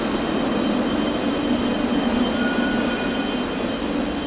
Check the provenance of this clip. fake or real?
real